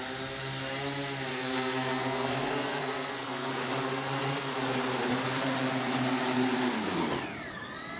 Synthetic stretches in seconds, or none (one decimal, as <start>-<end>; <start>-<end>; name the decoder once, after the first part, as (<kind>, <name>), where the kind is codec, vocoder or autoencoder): 1.3-3.5 (codec, SNAC)